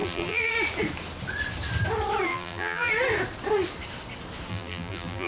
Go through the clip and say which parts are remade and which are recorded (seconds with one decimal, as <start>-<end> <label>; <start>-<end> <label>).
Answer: 0.0-0.5 remade; 0.5-2.3 recorded; 2.3-2.9 remade; 2.9-4.5 recorded; 4.5-5.3 remade